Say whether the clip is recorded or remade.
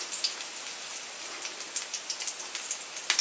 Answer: recorded